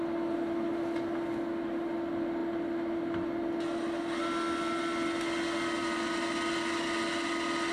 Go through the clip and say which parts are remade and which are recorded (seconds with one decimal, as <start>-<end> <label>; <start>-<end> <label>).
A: 0.0-7.7 recorded